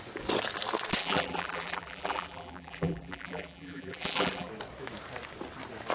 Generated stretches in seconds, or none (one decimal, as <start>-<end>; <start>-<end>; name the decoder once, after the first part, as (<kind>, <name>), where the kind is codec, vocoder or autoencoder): 1.0-4.5 (vocoder, BigVGAN v2)

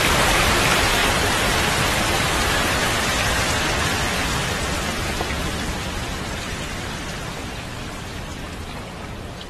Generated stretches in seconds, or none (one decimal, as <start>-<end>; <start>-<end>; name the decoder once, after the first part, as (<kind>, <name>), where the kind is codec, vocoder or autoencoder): 0.0-1.0 (vocoder, BigVGAN v2); 1.6-9.5

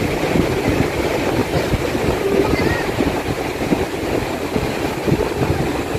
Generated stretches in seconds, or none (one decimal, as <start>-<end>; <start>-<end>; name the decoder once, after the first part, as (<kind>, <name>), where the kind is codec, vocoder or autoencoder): 1.4-4.8 (vocoder, BigVGAN v2)